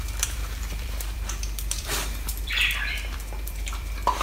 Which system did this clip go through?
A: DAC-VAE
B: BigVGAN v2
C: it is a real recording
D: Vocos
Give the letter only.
B